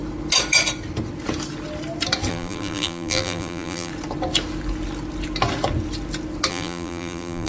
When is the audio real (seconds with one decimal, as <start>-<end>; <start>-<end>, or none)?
0.0-2.3; 3.9-6.5